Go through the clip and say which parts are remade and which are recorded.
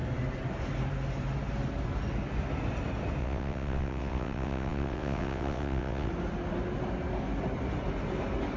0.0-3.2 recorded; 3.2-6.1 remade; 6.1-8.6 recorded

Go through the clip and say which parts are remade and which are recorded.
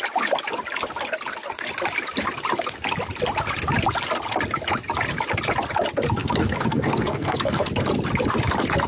0.0-6.2 recorded; 6.2-7.7 remade; 7.7-8.9 recorded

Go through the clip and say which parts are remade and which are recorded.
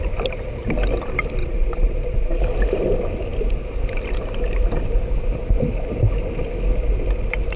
0.0-1.4 recorded; 1.4-2.4 remade; 2.4-7.6 recorded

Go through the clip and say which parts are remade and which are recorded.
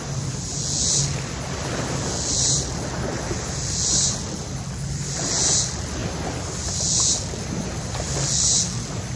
0.0-9.2 recorded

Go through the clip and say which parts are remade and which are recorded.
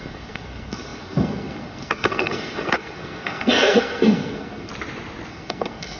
0.0-4.7 remade; 4.7-5.3 recorded; 5.3-6.0 remade